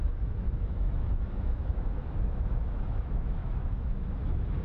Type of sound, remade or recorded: remade